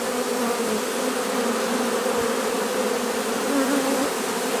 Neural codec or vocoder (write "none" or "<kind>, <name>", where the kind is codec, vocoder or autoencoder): none